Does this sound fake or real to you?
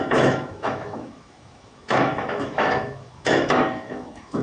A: fake